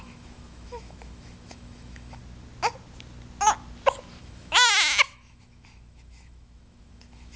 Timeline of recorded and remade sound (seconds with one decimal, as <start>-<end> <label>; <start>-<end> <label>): 0.0-2.2 remade; 2.2-4.2 recorded; 4.2-7.4 remade